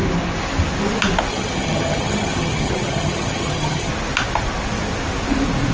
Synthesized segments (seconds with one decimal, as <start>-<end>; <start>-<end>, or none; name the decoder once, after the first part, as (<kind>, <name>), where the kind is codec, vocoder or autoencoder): 1.3-3.9 (vocoder, HiFi-GAN)